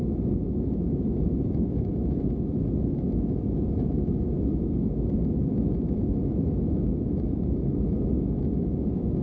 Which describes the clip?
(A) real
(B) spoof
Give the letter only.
B